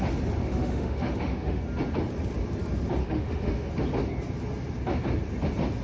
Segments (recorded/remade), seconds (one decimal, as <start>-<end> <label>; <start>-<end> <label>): 0.0-0.4 recorded; 0.4-1.6 remade; 1.6-3.0 recorded; 3.0-3.7 remade; 3.7-5.8 recorded